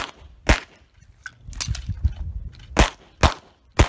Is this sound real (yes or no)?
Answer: yes